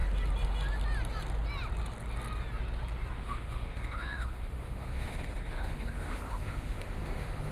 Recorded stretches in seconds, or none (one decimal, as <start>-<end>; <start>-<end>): 0.0-3.1